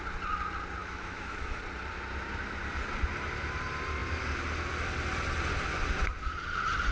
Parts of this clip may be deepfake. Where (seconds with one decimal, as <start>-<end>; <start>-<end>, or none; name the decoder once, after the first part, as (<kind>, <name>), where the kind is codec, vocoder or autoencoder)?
0.8-1.6 (autoencoder, DAC-VAE)